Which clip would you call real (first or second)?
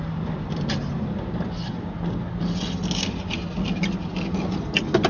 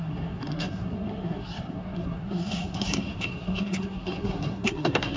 first